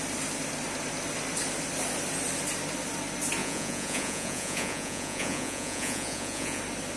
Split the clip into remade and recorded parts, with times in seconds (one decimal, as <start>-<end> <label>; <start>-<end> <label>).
0.0-3.4 recorded; 3.4-6.6 remade; 6.6-7.0 recorded